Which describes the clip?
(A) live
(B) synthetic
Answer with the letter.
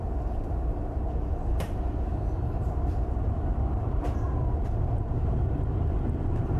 B